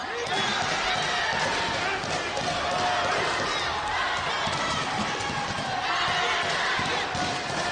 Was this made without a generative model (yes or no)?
yes